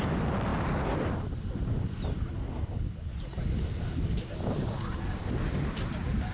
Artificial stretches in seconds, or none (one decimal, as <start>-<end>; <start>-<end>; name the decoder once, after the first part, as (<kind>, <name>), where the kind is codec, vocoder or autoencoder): none